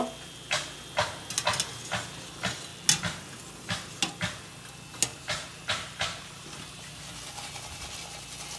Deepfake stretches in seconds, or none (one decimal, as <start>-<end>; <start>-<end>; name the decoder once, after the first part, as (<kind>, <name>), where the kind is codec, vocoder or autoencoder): 5.1-6.9 (vocoder, BigVGAN v2)